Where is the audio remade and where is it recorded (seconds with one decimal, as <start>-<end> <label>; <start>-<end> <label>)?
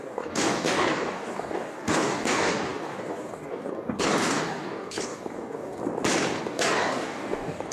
0.0-5.8 remade; 5.8-6.4 recorded; 6.4-7.7 remade